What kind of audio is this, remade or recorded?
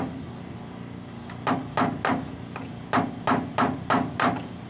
recorded